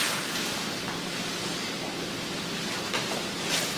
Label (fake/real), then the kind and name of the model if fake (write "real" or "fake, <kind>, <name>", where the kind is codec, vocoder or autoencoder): real